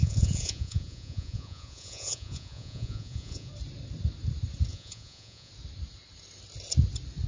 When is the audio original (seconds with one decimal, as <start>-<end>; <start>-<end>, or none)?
3.5-4.7; 5.5-7.3